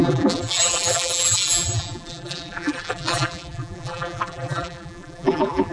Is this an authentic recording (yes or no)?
no